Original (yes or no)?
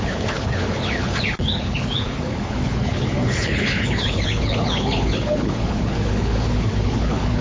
no